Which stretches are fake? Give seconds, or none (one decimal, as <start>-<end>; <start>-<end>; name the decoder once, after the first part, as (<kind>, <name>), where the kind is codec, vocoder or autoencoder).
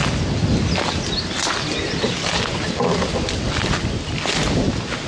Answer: none